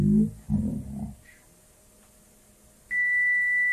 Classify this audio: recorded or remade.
recorded